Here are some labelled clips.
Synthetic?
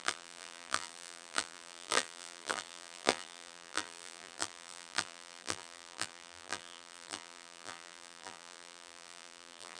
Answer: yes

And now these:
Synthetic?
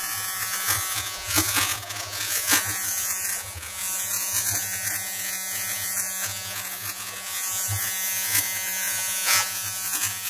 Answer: yes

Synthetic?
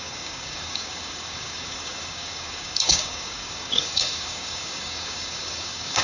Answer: yes